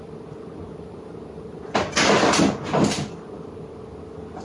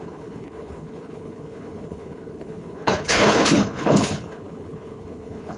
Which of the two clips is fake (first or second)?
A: second